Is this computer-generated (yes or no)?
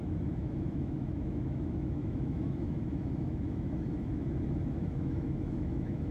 yes